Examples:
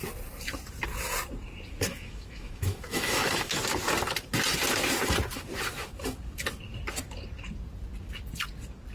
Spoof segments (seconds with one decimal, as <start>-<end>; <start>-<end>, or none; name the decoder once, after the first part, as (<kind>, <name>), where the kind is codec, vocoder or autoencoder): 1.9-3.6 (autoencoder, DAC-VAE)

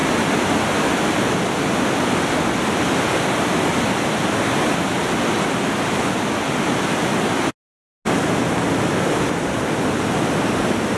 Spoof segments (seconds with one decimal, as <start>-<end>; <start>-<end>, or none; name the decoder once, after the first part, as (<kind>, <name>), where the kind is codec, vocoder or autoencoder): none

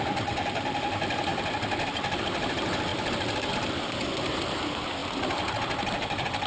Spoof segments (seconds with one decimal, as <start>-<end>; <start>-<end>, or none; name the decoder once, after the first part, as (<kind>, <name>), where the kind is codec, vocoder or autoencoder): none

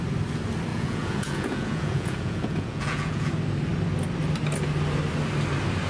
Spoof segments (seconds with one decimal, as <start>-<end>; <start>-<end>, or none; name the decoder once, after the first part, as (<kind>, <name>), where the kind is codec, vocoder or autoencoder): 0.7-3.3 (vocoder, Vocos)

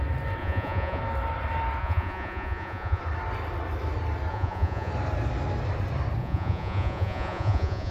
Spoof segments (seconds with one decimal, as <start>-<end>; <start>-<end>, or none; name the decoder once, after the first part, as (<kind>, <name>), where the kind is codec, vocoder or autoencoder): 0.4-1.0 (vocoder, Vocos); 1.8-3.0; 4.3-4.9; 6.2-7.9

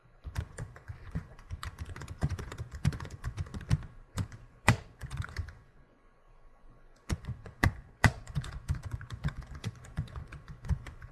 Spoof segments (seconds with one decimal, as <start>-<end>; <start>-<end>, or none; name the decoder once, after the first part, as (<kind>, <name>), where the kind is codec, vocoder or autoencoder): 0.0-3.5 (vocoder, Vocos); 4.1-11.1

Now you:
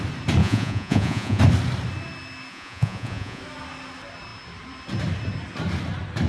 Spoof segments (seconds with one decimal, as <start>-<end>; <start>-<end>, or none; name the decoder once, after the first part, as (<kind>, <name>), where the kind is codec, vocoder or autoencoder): 0.4-1.4 (vocoder, Vocos); 2.5-3.4